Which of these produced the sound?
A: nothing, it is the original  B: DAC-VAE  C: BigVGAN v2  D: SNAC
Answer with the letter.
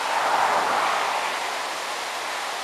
A